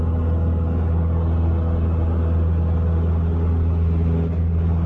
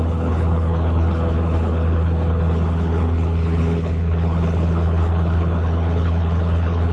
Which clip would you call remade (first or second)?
second